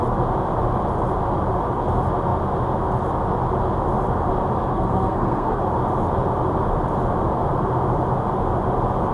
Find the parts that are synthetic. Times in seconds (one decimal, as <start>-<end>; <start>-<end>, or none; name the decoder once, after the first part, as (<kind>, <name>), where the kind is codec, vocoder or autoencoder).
4.7-5.6 (codec, SNAC)